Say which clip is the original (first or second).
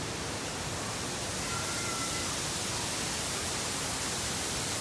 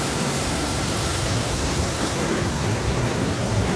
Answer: first